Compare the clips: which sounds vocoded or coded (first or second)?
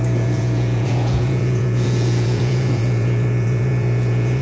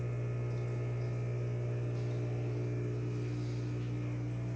first